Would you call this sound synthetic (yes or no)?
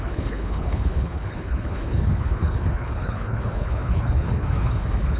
yes